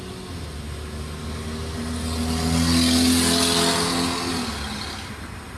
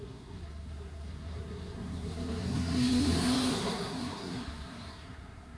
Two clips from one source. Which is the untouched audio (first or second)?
first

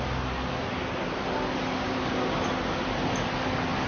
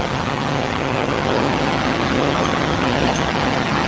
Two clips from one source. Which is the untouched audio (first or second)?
first